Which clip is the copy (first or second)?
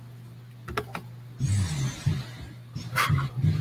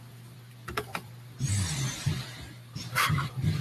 second